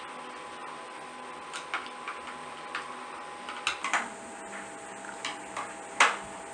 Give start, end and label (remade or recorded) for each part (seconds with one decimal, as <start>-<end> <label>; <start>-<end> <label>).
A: 0.0-6.5 recorded